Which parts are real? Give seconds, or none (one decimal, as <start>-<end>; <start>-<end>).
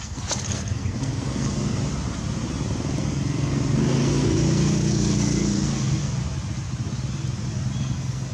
1.8-3.0; 6.2-7.8